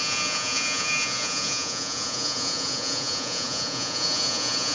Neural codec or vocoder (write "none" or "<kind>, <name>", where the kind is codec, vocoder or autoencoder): vocoder, Vocos